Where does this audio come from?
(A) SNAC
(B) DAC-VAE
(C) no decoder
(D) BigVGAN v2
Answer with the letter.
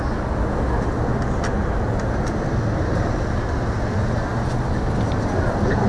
C